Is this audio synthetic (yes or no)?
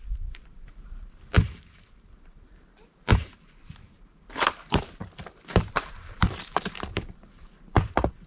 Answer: yes